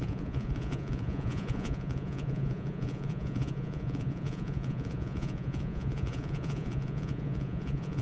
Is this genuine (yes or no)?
no